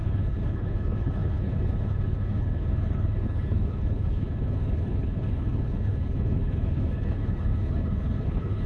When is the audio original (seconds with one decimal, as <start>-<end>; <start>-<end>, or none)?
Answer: none